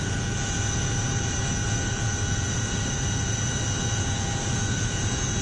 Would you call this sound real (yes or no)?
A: no